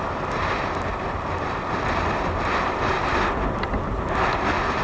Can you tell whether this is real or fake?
real